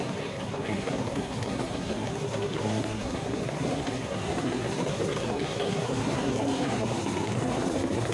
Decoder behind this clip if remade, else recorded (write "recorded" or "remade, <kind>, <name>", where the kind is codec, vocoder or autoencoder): remade, codec, SNAC